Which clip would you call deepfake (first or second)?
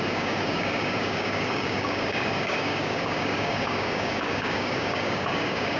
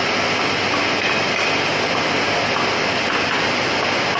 first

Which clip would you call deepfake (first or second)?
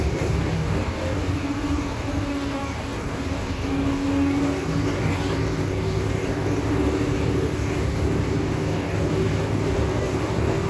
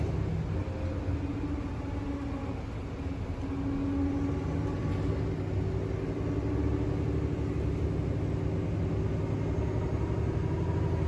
first